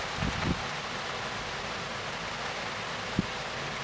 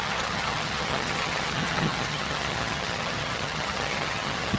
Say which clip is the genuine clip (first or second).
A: first